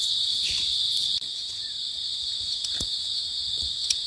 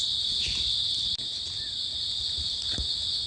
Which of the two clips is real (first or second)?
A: second